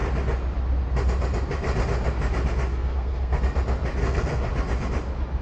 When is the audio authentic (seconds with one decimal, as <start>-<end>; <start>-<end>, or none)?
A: 0.0-2.7; 3.4-4.0; 4.5-5.4